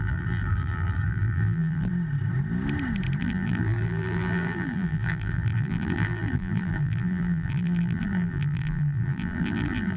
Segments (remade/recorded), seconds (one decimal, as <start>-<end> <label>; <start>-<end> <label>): 0.0-1.9 remade; 1.9-3.2 recorded; 3.2-10.0 remade